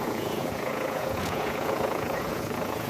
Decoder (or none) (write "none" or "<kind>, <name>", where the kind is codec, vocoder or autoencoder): vocoder, Vocos